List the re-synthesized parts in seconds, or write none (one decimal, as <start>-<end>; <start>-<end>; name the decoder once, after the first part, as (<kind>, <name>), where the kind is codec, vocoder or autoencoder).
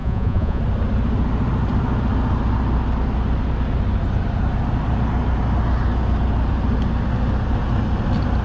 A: 0.0-0.6 (vocoder, Vocos)